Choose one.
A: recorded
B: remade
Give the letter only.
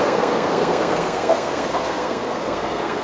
B